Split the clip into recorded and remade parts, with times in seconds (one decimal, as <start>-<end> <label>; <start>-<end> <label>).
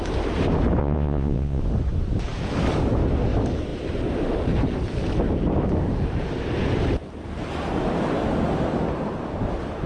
0.0-0.8 recorded; 0.8-1.6 remade; 1.6-9.9 recorded